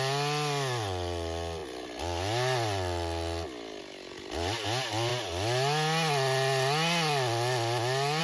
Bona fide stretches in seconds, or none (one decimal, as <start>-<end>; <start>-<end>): 0.0-8.2